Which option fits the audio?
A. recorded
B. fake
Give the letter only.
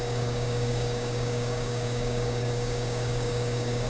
B